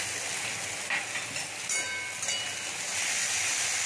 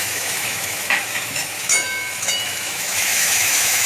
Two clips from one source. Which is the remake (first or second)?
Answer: second